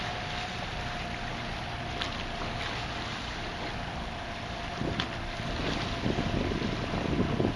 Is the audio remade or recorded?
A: recorded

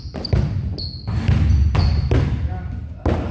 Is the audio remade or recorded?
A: recorded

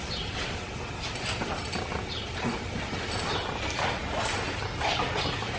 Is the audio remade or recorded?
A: recorded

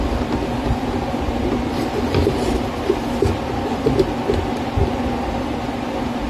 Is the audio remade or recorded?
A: recorded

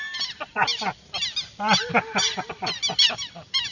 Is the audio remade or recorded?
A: recorded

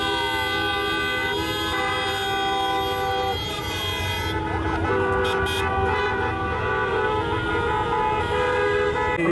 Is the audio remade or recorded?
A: recorded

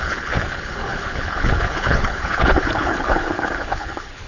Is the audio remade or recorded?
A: remade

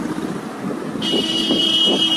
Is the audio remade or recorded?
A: recorded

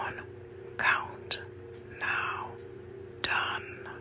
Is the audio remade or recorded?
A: recorded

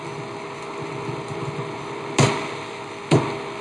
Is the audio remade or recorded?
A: recorded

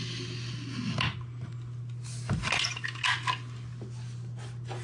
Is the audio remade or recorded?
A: recorded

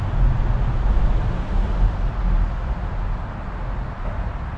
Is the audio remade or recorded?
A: recorded